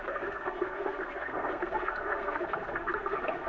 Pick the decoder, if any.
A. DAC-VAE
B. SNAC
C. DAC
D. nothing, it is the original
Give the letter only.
B